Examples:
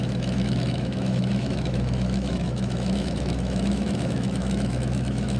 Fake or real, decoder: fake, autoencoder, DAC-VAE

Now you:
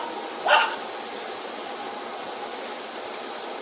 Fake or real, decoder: real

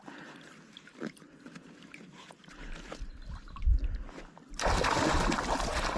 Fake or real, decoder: real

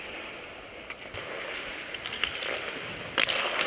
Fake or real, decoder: real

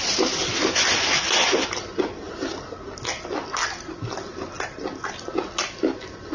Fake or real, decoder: real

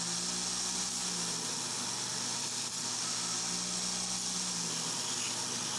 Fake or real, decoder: real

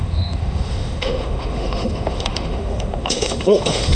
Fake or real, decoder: fake, autoencoder, DAC-VAE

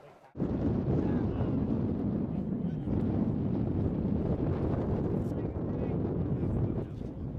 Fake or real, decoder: real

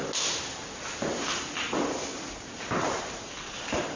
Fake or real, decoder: real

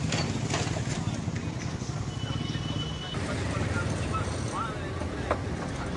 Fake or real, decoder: real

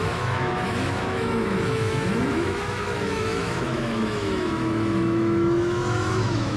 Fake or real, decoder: fake, autoencoder, DAC-VAE